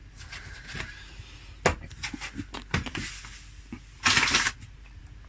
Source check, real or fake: real